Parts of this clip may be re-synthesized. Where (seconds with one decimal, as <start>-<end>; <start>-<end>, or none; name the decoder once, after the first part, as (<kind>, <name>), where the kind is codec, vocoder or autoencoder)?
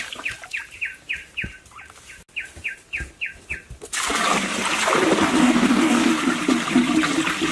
5.4-6.1 (codec, DAC)